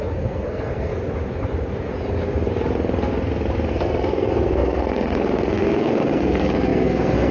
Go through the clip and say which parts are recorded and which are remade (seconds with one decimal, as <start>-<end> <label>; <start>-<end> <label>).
0.0-0.9 remade; 0.9-3.7 recorded; 3.7-7.3 remade